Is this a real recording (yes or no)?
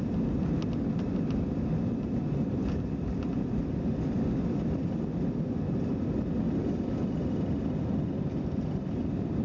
yes